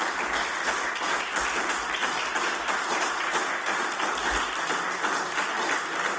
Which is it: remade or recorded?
recorded